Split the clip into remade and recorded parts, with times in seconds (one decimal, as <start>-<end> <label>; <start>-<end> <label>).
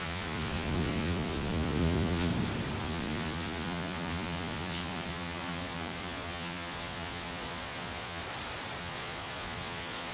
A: 0.0-2.3 remade; 2.3-2.8 recorded; 2.8-8.2 remade; 8.2-8.8 recorded; 8.8-10.1 remade